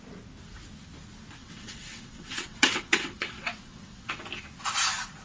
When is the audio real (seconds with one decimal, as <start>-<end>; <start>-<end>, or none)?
0.0-1.4; 4.2-5.2